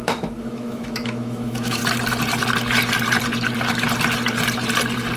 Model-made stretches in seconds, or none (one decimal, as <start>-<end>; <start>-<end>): 0.0-1.8